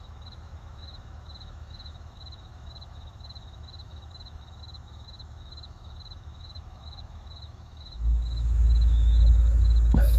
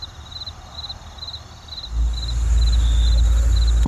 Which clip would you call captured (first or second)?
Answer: second